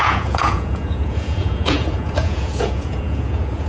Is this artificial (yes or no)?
yes